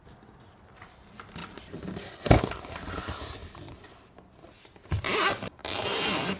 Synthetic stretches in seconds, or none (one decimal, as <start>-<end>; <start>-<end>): 3.4-4.4; 5.6-6.4